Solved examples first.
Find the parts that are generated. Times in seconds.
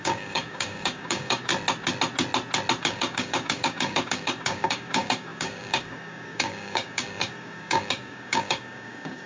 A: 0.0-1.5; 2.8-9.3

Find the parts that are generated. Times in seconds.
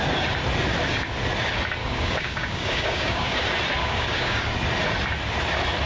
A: 1.8-3.4; 3.8-4.4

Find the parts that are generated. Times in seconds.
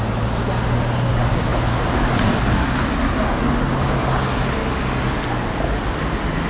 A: 4.6-5.2